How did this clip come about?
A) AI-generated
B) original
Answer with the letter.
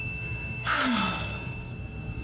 A